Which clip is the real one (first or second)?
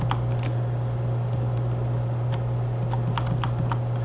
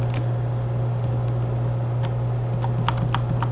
second